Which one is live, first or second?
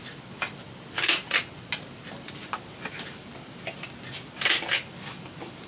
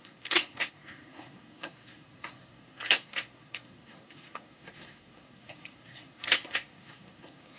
first